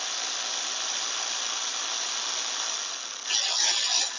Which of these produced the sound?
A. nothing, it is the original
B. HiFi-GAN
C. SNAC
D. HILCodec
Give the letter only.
A